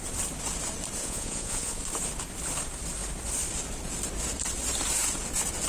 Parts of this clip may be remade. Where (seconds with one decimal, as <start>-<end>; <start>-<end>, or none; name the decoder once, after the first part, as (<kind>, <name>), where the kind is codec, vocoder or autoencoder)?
1.0-1.8 (vocoder, Vocos)